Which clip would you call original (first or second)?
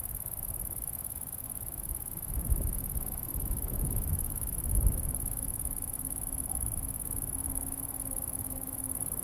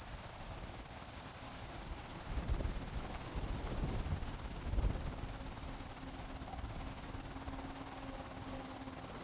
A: second